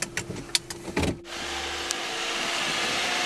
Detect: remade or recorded recorded